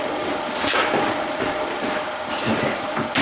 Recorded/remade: recorded